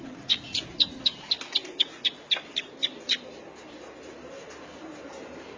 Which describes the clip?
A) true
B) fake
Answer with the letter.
A